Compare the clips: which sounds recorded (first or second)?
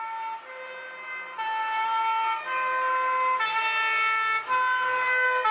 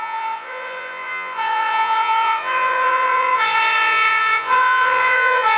first